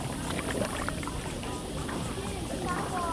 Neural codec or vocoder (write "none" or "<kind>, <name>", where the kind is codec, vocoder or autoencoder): none